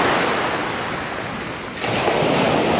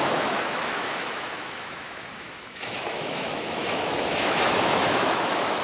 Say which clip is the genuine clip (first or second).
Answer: first